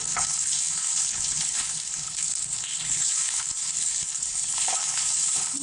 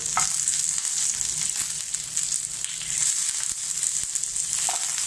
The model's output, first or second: first